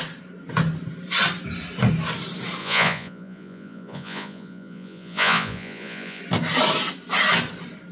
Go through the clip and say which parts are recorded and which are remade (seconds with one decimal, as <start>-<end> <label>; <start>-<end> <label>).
0.0-2.6 recorded; 2.6-6.2 remade; 6.2-7.9 recorded